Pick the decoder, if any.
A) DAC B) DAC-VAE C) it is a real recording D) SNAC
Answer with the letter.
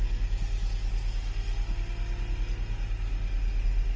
C